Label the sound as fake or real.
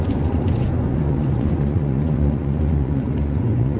fake